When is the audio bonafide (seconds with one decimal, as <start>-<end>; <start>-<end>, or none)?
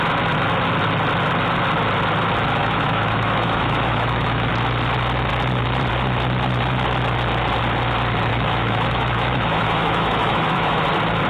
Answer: 0.0-2.6; 4.5-8.3; 10.8-11.3